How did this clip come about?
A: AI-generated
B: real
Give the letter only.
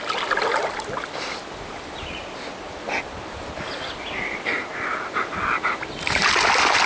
B